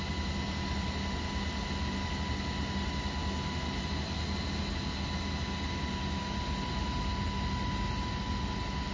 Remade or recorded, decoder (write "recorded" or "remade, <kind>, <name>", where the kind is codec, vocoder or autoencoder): recorded